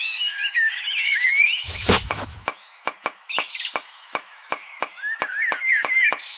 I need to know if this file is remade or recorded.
remade